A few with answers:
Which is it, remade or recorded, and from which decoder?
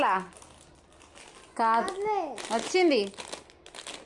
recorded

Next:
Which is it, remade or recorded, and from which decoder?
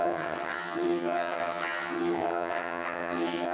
remade, vocoder, HiFi-GAN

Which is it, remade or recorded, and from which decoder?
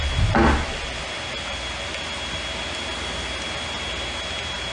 recorded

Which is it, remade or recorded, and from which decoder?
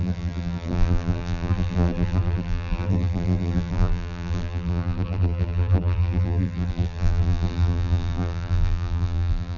remade, vocoder, BigVGAN v2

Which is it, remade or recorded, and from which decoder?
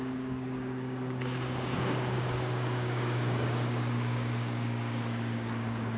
remade, codec, DAC